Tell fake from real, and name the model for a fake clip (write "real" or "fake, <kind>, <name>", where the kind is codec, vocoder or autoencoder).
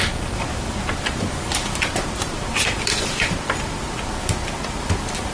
fake, vocoder, BigVGAN v2